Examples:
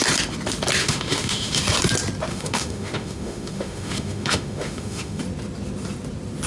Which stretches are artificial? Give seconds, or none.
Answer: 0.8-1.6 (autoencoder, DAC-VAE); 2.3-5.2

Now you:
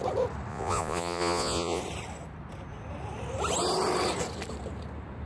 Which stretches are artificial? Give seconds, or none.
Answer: 0.5-1.8 (vocoder, Vocos)

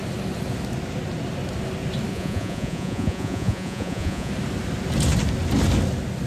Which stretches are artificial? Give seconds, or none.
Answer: 2.1-4.3 (vocoder, Vocos)

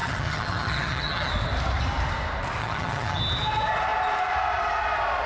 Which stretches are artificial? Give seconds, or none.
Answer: 0.0-1.3 (vocoder, HiFi-GAN); 2.6-3.2